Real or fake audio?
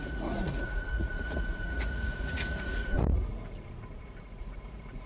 fake